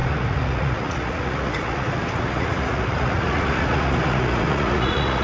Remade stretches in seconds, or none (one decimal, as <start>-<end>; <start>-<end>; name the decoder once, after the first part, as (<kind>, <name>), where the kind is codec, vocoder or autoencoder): 0.0-5.2 (vocoder, Vocos)